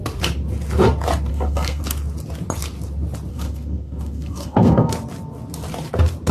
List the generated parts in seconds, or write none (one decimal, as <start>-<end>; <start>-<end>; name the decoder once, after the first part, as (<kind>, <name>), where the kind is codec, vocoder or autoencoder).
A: 1.3-1.8 (codec, SNAC); 3.3-4.9